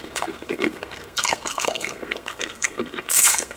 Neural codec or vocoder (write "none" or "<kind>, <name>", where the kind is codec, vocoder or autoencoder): codec, SNAC